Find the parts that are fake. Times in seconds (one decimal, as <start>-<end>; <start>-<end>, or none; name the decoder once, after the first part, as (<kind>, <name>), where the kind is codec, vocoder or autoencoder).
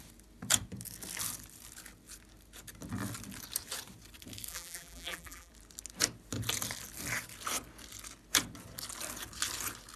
4.5-5.5 (vocoder, BigVGAN v2)